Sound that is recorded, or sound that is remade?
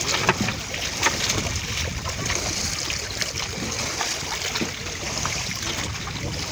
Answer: recorded